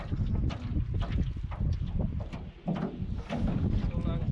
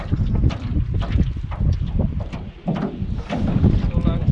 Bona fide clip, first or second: first